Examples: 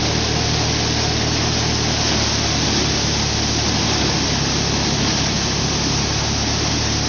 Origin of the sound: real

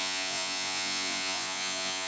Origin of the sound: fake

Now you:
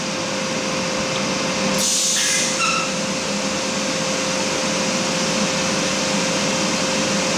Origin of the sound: real